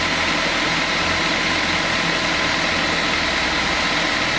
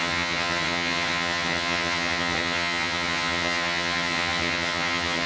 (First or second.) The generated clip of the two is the second